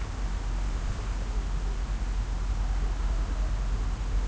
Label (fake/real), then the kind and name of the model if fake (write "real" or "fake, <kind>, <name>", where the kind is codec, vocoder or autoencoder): real